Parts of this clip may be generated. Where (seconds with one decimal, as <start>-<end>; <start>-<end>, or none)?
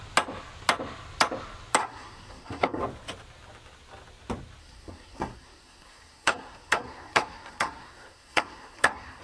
1.8-2.8; 4.6-9.2